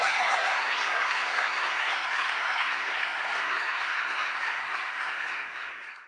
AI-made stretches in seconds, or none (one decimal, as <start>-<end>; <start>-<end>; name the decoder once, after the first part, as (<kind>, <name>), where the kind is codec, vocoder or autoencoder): 0.0-6.1 (codec, SNAC)